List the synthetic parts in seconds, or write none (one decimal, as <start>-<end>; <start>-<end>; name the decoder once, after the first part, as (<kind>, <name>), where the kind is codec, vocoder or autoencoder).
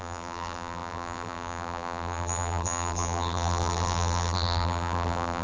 0.0-5.4 (vocoder, BigVGAN v2)